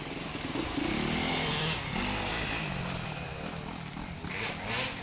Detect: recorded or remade recorded